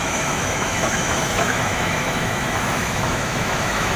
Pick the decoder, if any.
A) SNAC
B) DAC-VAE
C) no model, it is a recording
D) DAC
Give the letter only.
B